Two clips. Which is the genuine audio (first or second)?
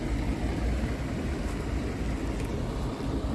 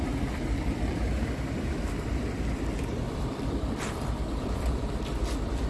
first